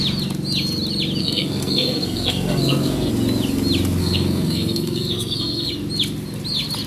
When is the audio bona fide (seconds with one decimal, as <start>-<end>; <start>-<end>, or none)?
0.0-1.2; 3.1-4.0; 5.7-6.9